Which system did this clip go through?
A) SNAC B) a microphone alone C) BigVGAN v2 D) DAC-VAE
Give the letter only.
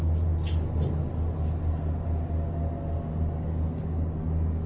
B